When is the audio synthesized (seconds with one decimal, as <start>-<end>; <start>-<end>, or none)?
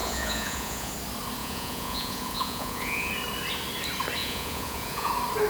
0.0-0.9; 1.4-3.1; 4.2-5.1